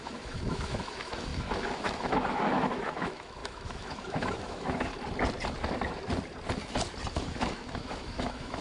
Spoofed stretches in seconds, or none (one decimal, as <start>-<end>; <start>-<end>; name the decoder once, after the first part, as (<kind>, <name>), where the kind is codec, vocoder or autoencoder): 0.0-4.9 (autoencoder, DAC-VAE); 7.1-8.6